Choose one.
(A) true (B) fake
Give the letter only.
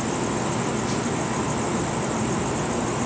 A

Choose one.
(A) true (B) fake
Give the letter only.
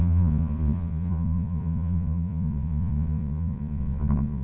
B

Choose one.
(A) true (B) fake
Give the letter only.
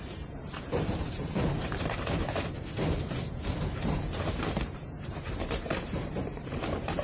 B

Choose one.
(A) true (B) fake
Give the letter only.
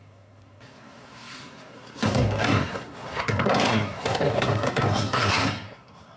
B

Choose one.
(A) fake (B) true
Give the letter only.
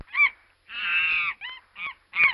B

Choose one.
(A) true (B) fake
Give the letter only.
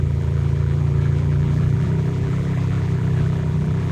B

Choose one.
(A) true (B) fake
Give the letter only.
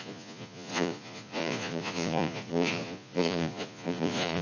B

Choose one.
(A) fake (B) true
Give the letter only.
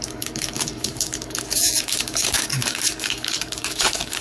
A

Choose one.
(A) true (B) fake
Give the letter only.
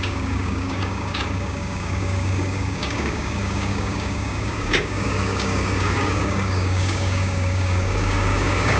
B